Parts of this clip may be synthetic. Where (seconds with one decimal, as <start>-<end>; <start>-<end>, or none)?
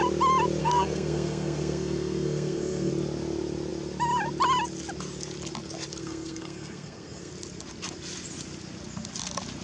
0.6-2.9; 6.0-7.3